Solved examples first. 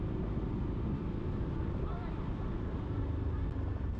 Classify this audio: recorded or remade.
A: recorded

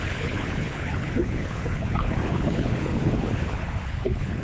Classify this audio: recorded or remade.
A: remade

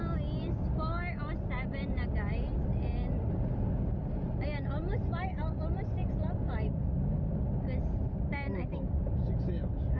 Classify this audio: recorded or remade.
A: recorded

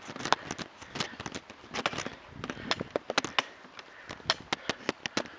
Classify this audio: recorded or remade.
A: recorded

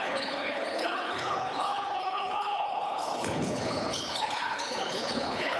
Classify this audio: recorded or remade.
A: remade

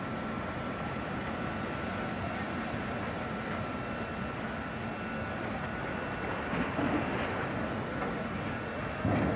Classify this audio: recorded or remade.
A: recorded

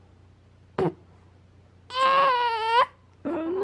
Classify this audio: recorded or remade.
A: recorded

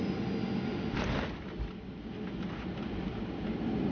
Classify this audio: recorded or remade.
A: recorded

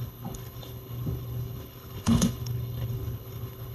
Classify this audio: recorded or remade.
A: remade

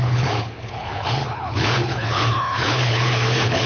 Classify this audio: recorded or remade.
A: remade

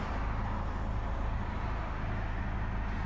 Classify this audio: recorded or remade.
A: recorded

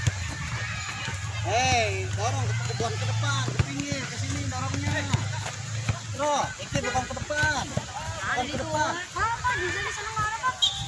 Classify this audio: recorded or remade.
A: recorded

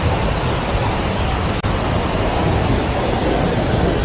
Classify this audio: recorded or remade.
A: recorded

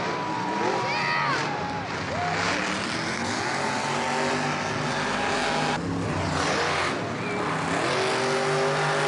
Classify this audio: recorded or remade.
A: recorded